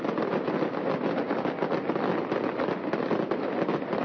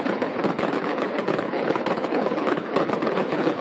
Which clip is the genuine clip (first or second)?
first